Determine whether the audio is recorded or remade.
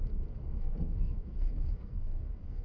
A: remade